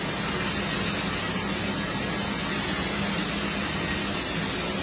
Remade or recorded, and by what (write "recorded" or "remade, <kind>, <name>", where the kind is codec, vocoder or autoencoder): recorded